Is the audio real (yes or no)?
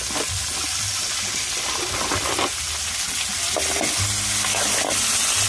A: yes